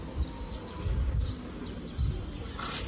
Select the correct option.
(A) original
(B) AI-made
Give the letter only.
A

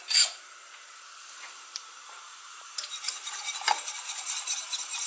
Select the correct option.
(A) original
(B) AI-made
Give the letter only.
B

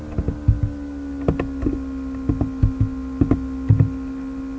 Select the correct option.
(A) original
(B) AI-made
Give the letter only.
A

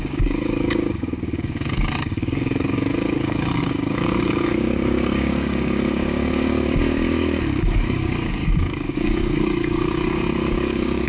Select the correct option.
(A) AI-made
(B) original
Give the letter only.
A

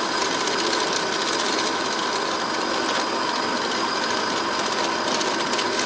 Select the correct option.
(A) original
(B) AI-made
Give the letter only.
A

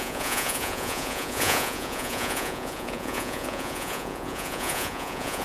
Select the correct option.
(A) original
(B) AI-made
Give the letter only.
B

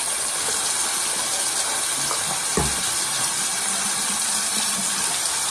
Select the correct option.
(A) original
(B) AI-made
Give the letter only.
A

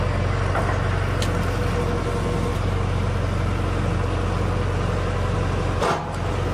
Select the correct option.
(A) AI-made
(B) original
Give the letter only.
B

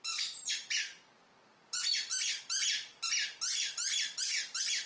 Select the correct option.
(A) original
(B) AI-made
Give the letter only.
A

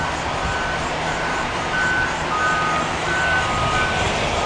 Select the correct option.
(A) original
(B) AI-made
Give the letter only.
A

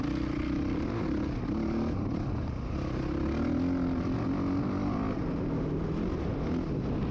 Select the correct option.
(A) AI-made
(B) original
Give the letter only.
B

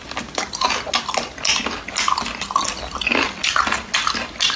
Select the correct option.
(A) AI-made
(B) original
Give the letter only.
B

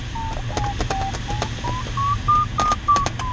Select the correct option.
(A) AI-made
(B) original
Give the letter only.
B